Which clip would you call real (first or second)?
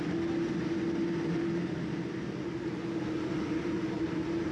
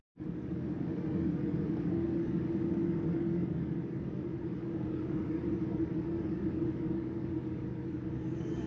first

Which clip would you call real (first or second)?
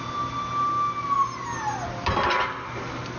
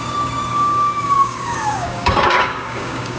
first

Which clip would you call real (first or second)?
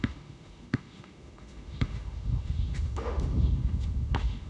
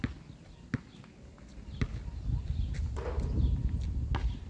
second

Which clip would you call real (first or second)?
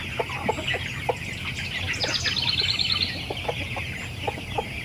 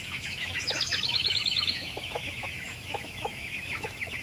first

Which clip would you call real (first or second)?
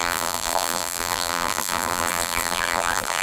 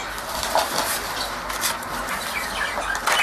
second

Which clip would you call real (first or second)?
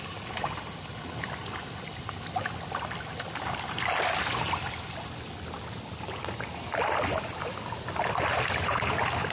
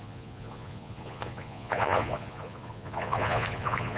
first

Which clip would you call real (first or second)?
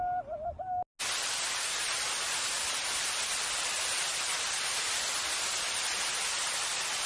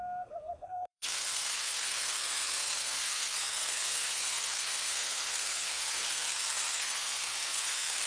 first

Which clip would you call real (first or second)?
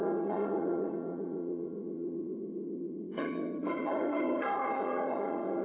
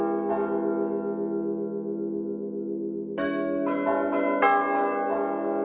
second